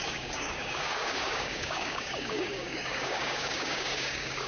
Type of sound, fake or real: fake